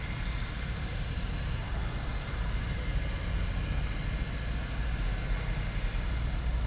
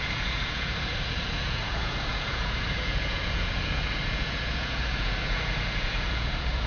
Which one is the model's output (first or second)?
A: second